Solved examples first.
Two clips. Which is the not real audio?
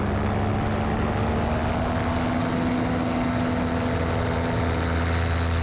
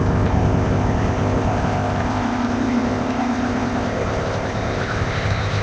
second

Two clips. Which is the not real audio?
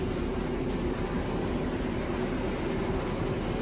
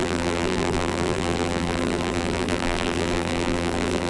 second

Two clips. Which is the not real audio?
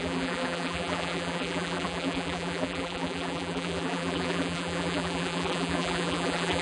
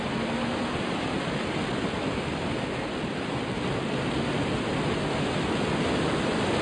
first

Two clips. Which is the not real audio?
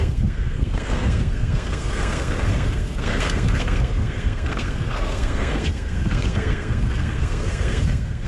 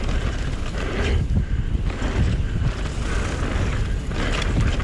first